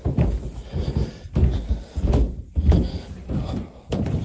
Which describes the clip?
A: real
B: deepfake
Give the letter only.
B